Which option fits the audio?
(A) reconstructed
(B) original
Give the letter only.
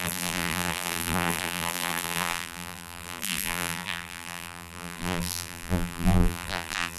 A